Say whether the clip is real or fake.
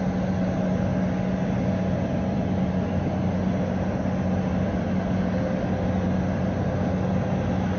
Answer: real